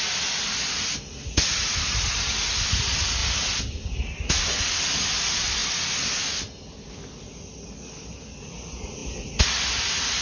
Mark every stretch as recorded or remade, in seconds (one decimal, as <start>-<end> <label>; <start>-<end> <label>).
0.0-10.2 recorded